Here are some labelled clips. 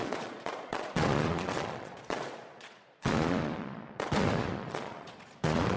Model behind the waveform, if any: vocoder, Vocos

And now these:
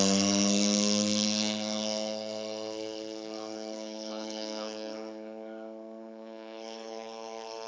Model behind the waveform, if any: codec, SNAC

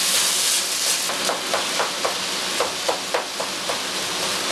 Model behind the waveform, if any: none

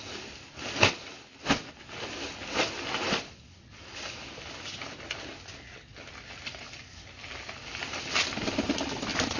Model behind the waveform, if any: none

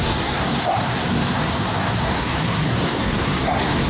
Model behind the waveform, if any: codec, SNAC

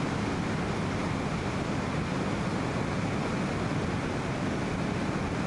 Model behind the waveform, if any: none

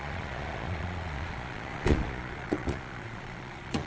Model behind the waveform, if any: vocoder, Vocos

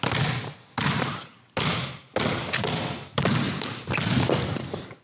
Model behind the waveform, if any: none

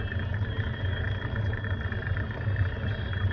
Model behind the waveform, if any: none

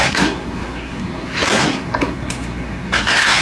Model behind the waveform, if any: codec, SNAC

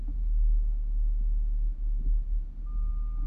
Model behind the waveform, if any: none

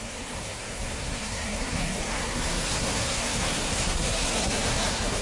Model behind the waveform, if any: codec, SNAC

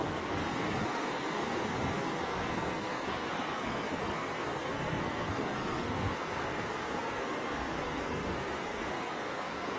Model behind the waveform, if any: codec, SNAC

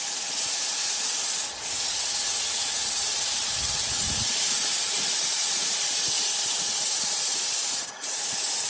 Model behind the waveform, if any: vocoder, Vocos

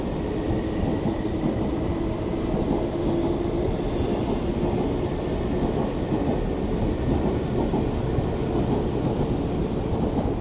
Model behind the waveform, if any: none